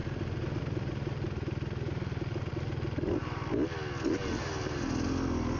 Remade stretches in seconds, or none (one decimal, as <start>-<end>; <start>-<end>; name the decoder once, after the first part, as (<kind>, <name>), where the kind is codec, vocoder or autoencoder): none